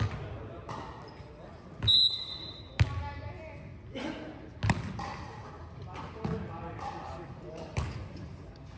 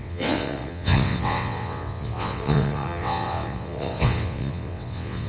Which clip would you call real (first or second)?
first